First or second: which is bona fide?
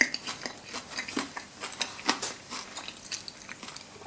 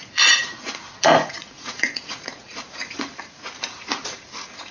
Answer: first